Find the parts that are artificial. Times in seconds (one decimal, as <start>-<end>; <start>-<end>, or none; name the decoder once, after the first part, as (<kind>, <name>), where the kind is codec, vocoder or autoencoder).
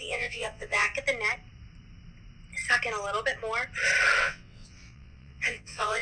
0.0-0.9 (vocoder, WaveNeXt); 4.2-6.0